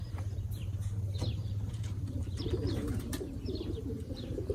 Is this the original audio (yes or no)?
no